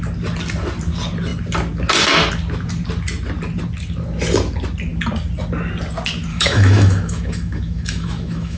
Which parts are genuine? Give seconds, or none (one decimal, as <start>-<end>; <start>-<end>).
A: 0.0-6.3